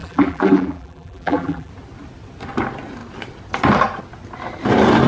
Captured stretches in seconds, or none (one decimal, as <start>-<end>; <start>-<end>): 1.7-5.1